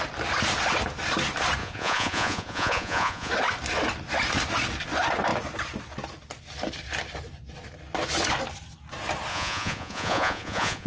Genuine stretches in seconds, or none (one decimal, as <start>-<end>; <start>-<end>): 0.0-1.6; 3.3-9.3